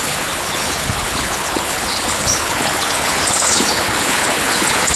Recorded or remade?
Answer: remade